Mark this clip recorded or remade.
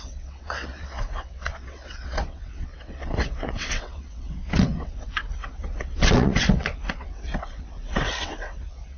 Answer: remade